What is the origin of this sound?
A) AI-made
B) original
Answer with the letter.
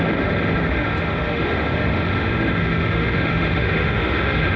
A